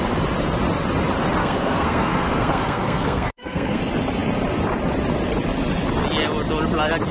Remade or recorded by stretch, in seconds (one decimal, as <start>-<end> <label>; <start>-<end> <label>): 0.0-1.4 recorded; 1.4-3.8 remade; 3.8-7.1 recorded